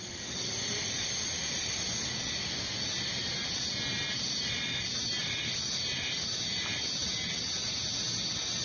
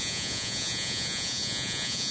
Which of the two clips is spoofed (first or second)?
second